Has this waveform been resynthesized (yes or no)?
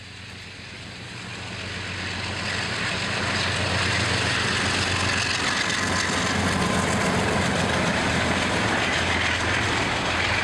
no